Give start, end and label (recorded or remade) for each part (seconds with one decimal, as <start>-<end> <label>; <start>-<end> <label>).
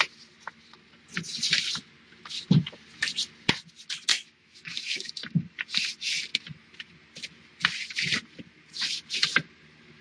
0.0-4.1 recorded; 4.1-5.1 remade; 5.1-6.3 recorded; 6.3-6.9 remade; 6.9-10.0 recorded